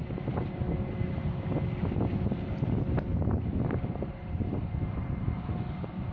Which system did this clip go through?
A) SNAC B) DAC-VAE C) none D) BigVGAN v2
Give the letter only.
C